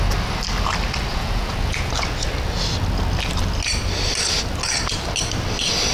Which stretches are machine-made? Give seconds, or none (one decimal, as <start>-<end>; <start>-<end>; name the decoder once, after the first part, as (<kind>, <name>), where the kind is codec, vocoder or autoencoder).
1.1-1.9 (vocoder, Vocos)